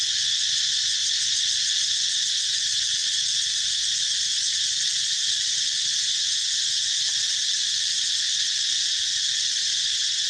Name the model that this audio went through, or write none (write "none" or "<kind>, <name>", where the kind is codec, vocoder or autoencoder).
none